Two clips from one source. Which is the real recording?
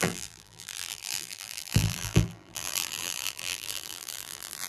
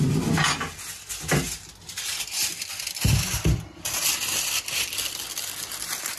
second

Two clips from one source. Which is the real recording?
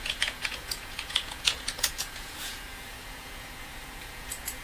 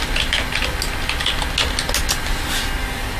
second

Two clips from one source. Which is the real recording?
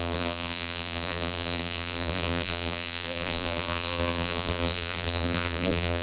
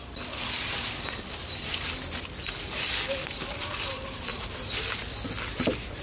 second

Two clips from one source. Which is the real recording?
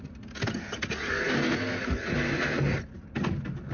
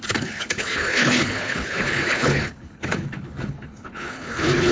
first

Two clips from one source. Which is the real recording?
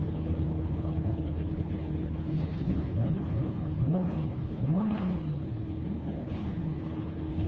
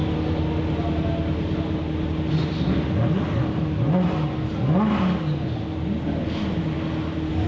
second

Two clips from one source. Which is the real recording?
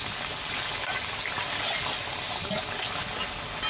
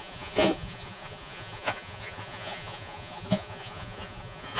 first